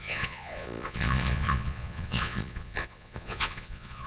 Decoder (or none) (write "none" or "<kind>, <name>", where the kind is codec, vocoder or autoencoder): vocoder, Vocos